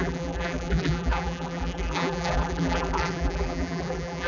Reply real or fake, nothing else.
fake